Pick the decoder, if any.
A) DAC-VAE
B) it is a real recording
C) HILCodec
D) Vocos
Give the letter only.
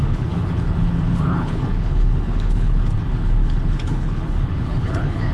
C